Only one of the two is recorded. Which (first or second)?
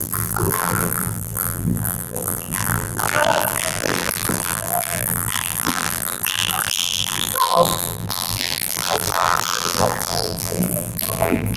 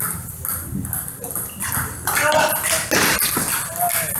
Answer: second